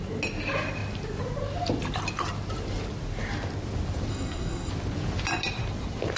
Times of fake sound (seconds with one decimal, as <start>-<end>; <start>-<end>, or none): 4.1-4.7